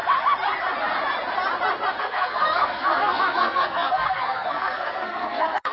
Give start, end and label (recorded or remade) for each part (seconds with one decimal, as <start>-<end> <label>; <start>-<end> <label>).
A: 0.0-2.0 recorded; 2.0-5.7 remade